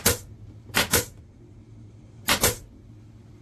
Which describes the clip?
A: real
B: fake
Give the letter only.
A